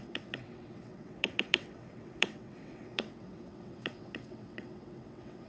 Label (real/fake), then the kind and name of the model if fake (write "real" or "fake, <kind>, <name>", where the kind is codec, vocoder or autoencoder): fake, vocoder, WaveNeXt